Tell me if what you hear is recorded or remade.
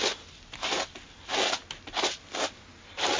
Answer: recorded